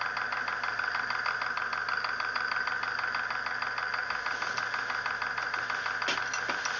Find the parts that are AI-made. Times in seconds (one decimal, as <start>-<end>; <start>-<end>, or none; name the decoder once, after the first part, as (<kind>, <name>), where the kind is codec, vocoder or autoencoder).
none